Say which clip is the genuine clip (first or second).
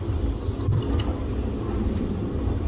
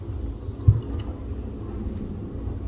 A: second